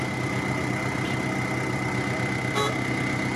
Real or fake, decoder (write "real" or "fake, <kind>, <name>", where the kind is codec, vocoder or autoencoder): real